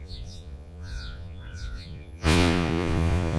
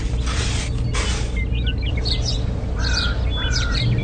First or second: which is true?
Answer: second